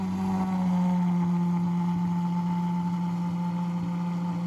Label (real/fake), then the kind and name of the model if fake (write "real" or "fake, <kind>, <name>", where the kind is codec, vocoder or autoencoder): real